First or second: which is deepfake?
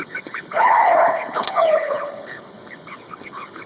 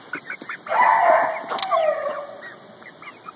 first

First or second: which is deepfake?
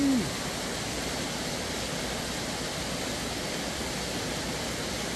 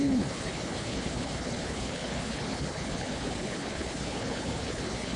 second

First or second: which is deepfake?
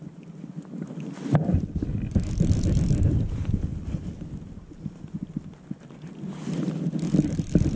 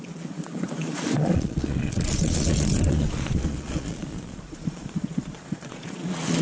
second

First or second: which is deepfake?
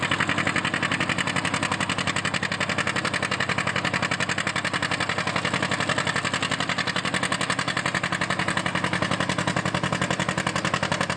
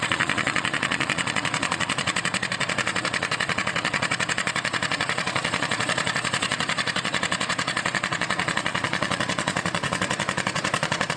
second